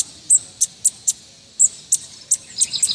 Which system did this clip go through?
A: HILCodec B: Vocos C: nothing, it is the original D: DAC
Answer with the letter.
C